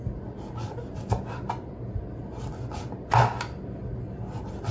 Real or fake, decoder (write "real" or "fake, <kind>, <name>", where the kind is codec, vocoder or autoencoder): real